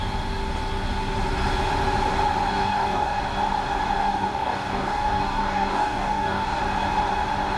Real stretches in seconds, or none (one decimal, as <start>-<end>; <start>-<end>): 0.0-2.5; 3.2-4.0; 6.6-7.6